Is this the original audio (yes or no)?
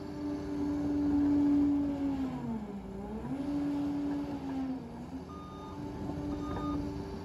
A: yes